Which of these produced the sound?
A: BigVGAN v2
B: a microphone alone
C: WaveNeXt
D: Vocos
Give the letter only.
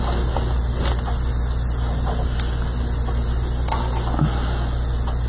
B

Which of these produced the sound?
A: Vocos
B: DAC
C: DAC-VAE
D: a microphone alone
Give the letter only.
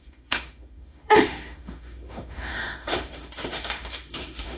C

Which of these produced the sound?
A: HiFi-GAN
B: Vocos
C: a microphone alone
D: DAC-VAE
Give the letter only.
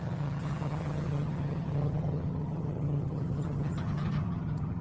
A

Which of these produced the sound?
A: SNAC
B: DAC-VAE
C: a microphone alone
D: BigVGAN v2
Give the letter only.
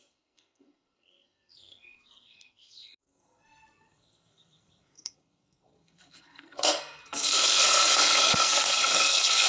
A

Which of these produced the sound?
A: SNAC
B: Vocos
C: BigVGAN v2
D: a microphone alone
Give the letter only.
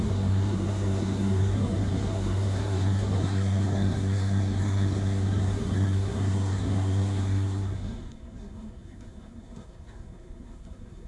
A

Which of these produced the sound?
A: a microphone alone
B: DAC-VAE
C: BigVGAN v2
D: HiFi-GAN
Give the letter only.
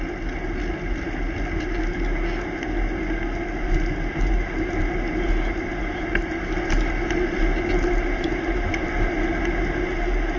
A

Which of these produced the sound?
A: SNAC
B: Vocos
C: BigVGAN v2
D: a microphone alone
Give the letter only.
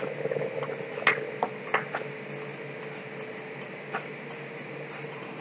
D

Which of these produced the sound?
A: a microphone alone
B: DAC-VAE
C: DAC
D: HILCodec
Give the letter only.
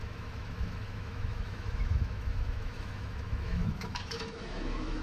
B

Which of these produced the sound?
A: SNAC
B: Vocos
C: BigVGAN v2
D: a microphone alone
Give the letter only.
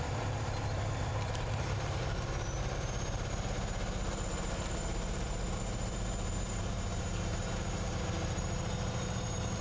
C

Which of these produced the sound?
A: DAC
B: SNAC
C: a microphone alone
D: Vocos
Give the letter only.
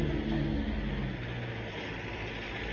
C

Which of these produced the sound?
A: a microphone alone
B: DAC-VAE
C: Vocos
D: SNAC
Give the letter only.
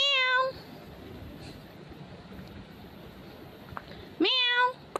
A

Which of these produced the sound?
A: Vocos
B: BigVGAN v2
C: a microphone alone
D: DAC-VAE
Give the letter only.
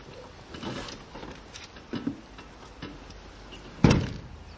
C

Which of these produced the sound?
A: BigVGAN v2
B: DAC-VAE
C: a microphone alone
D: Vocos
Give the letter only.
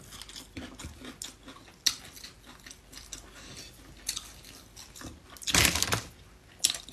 C